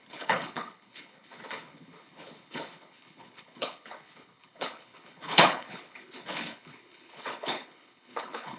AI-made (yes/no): yes